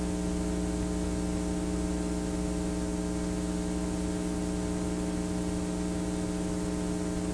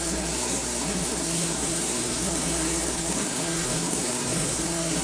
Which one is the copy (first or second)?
second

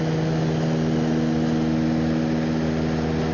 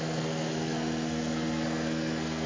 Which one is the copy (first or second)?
second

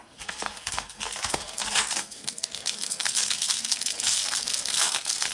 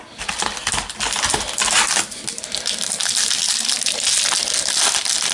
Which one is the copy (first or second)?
first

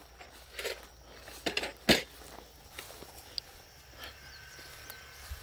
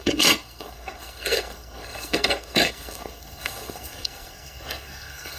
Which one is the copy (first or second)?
second